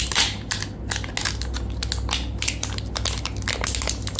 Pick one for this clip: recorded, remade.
recorded